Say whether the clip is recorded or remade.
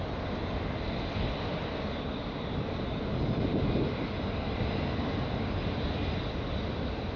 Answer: recorded